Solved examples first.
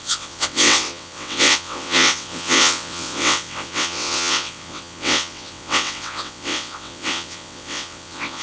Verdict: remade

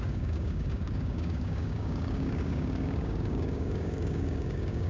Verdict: remade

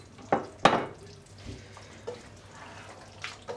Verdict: recorded